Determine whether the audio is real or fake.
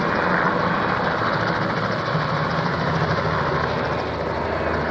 real